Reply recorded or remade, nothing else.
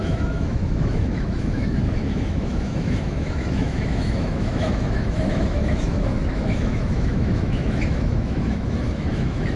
remade